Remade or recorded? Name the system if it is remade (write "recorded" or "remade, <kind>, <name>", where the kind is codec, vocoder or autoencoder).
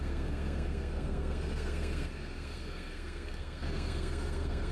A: remade, codec, SNAC